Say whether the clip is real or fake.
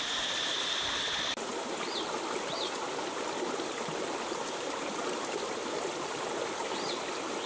fake